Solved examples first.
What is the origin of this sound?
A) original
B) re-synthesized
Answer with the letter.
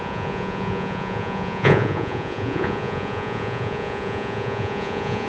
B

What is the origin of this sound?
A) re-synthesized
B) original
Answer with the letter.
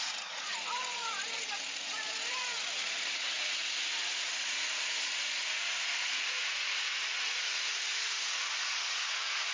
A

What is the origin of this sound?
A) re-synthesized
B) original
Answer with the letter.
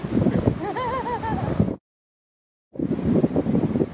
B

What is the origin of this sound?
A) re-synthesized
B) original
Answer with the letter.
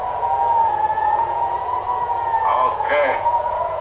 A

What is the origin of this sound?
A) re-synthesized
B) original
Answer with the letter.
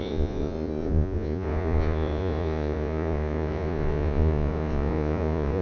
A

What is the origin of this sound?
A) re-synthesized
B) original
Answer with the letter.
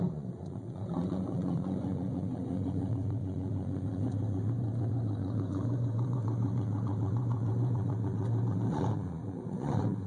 A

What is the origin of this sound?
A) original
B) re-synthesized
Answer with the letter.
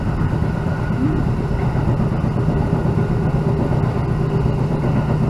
A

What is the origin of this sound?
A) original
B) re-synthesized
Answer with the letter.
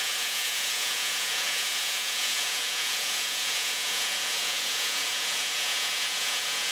B